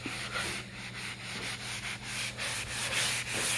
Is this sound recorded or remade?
recorded